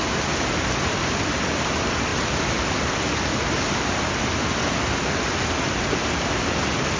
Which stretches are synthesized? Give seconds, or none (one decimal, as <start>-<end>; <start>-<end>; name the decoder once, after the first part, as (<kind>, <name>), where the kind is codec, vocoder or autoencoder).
none